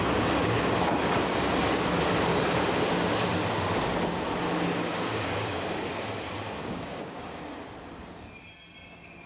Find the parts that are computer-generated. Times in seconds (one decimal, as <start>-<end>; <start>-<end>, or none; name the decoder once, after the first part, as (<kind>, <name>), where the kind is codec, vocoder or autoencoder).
4.9-5.9 (codec, DAC); 6.6-7.4